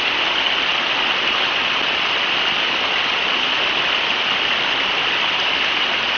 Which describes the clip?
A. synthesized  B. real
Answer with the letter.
B